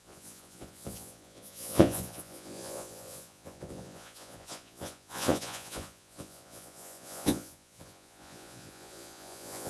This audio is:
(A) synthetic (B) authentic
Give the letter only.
A